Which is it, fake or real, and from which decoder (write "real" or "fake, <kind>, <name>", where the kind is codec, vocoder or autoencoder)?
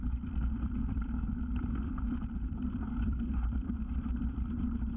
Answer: fake, vocoder, BigVGAN v2